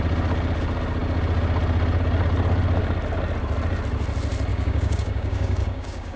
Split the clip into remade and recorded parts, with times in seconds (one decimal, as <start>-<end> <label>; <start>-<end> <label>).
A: 0.0-4.5 recorded; 4.5-6.2 remade